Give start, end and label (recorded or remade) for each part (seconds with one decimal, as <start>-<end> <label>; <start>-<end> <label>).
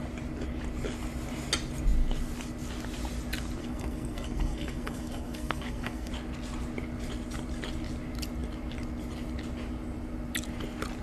0.0-3.6 recorded; 3.6-6.1 remade; 6.1-11.0 recorded